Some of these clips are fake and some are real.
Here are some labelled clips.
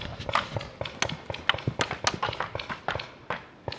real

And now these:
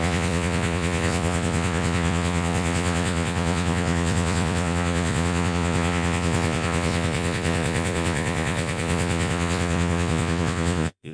fake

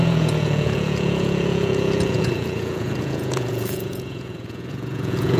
fake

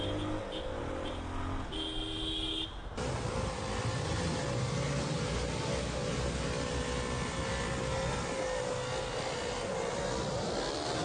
real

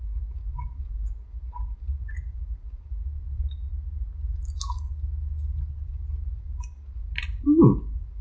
real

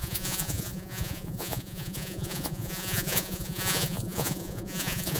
fake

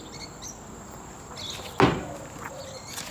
real